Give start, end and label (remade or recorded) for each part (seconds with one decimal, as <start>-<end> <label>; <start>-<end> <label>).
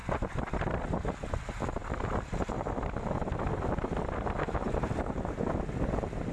0.0-0.8 remade; 0.8-6.3 recorded